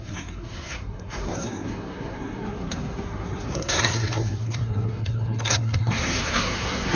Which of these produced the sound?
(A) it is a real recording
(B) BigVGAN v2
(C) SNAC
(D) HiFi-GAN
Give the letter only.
C